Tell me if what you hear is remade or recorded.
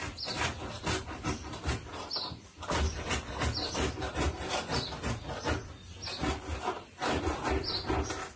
recorded